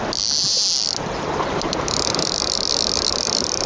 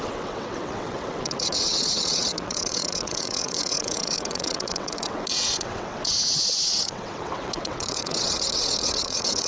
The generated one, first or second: second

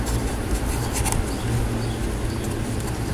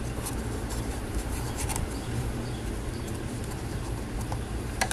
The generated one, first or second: second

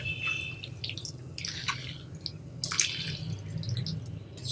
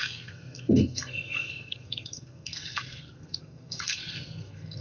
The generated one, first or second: second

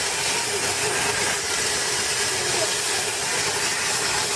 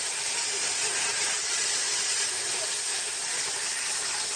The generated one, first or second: second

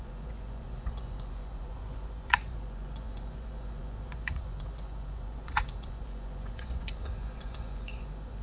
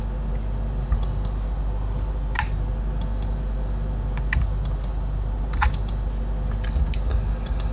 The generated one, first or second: first